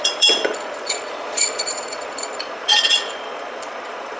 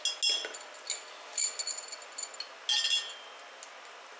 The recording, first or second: second